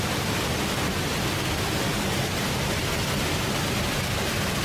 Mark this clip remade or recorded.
recorded